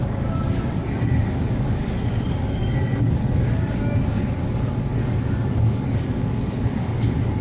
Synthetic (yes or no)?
yes